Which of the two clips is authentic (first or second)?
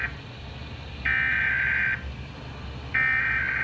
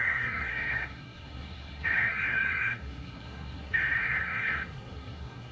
first